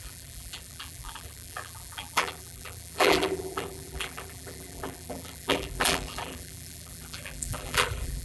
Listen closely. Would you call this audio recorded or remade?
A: remade